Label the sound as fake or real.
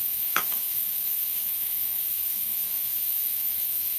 fake